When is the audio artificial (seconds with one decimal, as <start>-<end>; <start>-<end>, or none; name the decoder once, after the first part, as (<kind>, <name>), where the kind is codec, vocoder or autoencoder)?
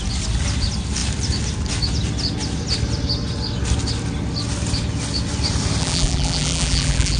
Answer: 5.8-7.2 (vocoder, BigVGAN v2)